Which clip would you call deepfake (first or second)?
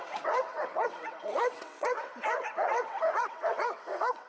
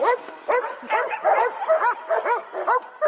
first